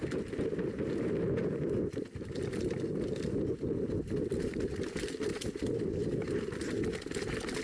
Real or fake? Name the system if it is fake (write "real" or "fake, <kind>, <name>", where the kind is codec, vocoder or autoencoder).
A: real